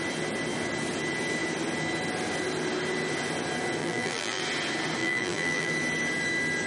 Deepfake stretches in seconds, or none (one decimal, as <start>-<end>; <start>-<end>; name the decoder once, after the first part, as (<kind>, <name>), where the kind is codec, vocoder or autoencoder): 3.8-4.4 (vocoder, BigVGAN v2); 5.0-5.7